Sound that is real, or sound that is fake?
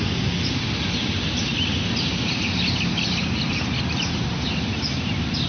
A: real